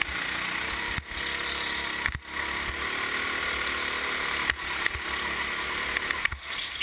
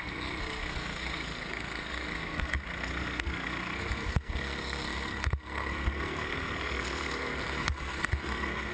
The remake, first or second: second